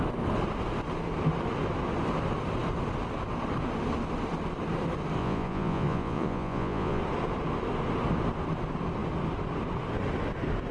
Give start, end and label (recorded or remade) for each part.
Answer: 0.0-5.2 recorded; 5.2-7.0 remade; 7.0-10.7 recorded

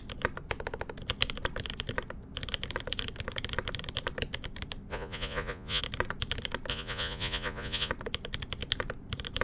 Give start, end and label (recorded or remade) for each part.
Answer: 0.0-4.9 recorded; 4.9-5.8 remade; 5.8-6.7 recorded; 6.7-7.9 remade; 7.9-9.4 recorded

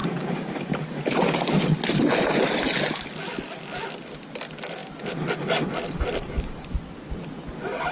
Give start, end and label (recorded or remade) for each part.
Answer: 0.0-7.9 recorded

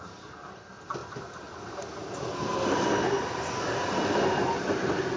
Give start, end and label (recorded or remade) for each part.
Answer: 0.0-5.2 recorded

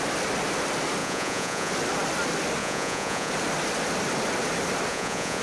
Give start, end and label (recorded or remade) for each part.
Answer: 0.0-1.0 recorded; 1.0-1.7 remade; 1.7-2.6 recorded; 2.6-3.3 remade; 3.3-4.9 recorded; 4.9-5.4 remade

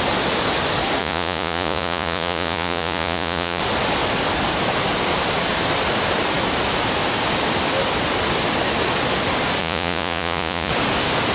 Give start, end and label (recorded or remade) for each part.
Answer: 0.0-1.0 recorded; 1.0-3.6 remade; 3.6-9.6 recorded; 9.6-10.7 remade; 10.7-11.3 recorded